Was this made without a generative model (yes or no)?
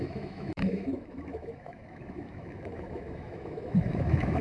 no